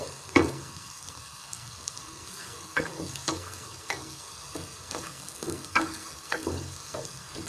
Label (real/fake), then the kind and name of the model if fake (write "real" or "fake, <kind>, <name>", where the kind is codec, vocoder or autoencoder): fake, codec, SNAC